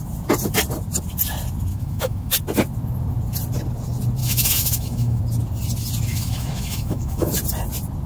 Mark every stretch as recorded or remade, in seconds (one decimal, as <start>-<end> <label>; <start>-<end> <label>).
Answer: 0.0-1.7 recorded; 1.7-2.3 remade; 2.3-4.2 recorded; 4.2-5.2 remade; 5.2-6.1 recorded; 6.1-7.3 remade; 7.3-8.1 recorded